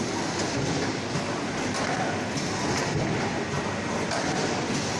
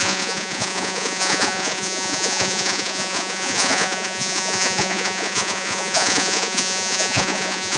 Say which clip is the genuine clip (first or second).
first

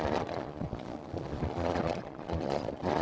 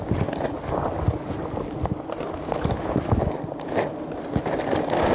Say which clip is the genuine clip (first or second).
second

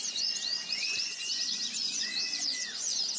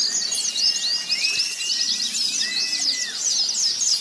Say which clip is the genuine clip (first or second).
second